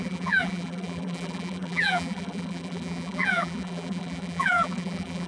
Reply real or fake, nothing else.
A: fake